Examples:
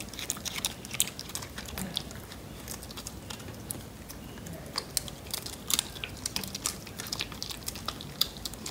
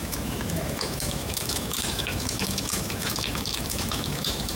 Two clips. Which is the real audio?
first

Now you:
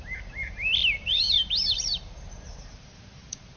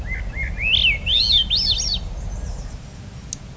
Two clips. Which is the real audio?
second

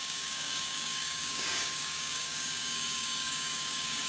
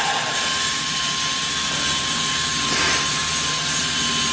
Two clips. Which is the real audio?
second